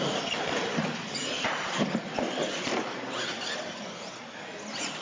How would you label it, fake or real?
real